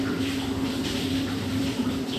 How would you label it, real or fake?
fake